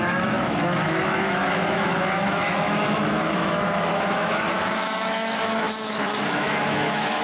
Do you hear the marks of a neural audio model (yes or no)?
yes